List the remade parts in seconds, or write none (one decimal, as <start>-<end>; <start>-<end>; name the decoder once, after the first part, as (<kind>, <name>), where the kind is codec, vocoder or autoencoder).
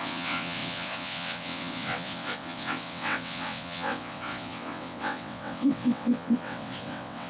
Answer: 0.0-7.3 (vocoder, WaveNeXt)